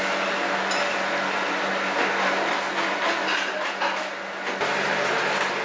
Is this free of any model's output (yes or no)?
yes